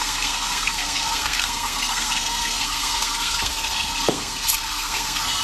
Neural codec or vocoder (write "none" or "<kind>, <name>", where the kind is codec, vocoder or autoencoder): codec, SNAC